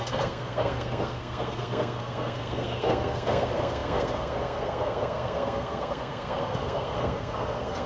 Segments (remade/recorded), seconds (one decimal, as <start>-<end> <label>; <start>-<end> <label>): 0.0-7.9 remade